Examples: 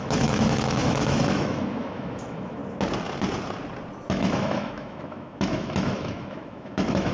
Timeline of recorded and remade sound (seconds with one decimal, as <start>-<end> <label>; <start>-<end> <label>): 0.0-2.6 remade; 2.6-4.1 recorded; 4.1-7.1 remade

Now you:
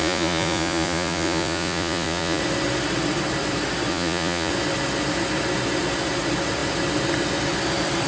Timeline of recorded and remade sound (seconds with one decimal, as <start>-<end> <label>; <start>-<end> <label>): 0.0-2.4 remade; 2.4-3.9 recorded; 3.9-4.5 remade; 4.5-8.1 recorded

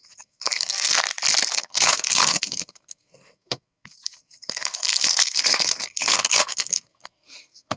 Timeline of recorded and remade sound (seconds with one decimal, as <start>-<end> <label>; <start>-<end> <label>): 0.0-1.0 remade; 1.0-1.5 recorded; 1.5-7.8 remade

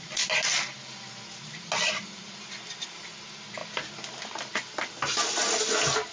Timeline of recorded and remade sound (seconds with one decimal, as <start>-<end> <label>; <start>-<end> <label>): 0.0-6.1 recorded

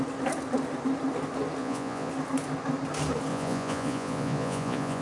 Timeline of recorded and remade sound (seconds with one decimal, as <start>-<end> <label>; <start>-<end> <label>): 0.0-1.6 recorded; 1.6-2.1 remade; 2.1-3.3 recorded; 3.3-5.0 remade